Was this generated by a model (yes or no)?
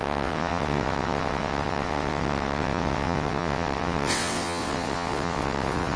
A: yes